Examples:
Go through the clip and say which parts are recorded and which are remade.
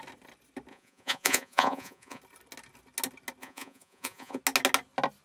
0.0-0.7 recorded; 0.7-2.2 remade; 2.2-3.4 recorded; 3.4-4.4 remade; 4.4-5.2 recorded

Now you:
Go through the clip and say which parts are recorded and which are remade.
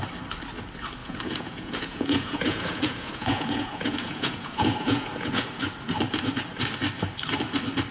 0.0-1.0 recorded; 1.0-5.6 remade; 5.6-7.9 recorded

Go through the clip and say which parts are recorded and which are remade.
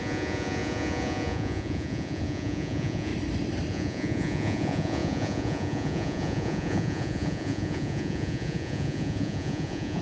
0.0-3.1 remade; 3.1-3.7 recorded; 3.7-10.0 remade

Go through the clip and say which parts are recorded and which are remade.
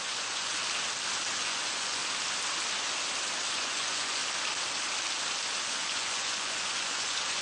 0.0-0.6 remade; 0.6-1.3 recorded; 1.3-2.0 remade; 2.0-3.5 recorded; 3.5-4.2 remade; 4.2-5.6 recorded; 5.6-7.4 remade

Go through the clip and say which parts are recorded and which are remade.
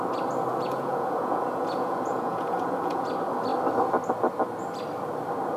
0.0-0.5 recorded; 0.5-3.1 remade; 3.1-5.6 recorded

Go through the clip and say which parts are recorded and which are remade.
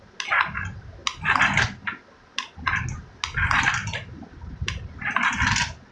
0.0-5.9 recorded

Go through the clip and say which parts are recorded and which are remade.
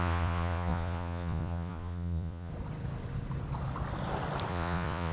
0.0-2.5 remade; 2.5-4.5 recorded; 4.5-5.1 remade